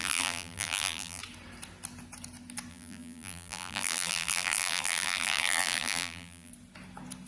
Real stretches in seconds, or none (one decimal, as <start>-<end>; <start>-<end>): 1.2-2.7; 6.5-7.3